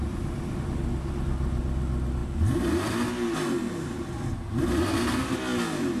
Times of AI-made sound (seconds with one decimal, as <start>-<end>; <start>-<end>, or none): none